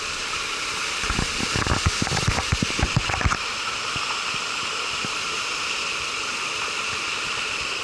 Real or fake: fake